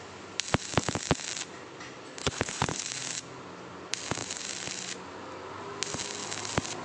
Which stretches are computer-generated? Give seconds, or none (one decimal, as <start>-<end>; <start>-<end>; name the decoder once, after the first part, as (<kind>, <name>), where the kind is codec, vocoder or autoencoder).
2.2-2.8 (codec, HILCodec)